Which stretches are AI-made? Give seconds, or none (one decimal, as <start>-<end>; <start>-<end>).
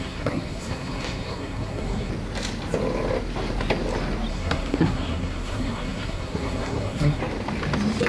0.0-2.1; 4.3-7.2